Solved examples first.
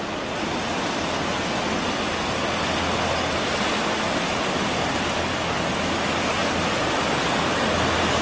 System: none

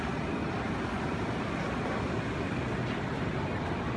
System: none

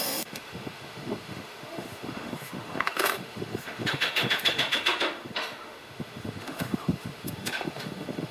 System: autoencoder, DAC-VAE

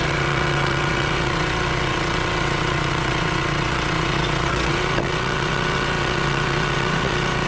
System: vocoder, WaveNeXt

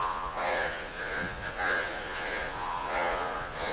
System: vocoder, Vocos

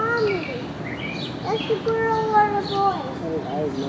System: none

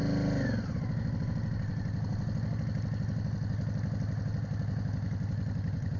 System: none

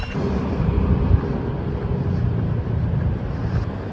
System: none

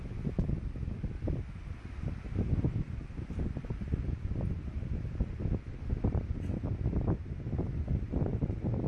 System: none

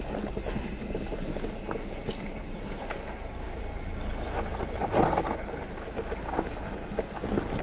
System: none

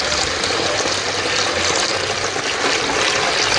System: none